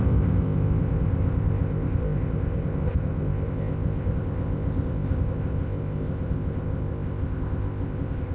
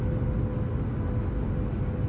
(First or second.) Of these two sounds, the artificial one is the first